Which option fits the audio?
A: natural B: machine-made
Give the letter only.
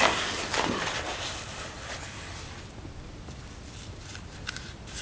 A